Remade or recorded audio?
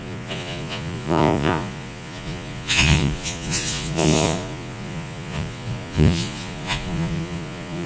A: remade